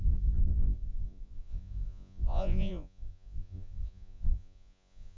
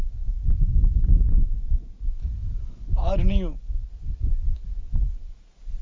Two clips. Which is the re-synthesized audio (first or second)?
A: first